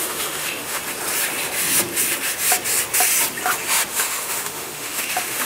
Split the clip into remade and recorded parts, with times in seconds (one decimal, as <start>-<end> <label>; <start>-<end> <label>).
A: 0.0-0.8 remade; 0.8-3.9 recorded; 3.9-5.5 remade